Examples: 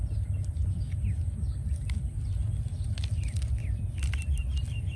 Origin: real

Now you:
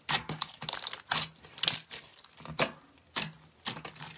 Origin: real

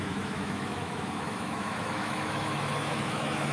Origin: fake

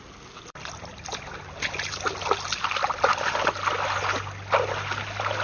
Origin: real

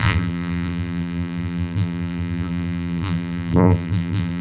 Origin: fake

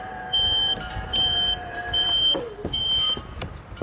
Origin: fake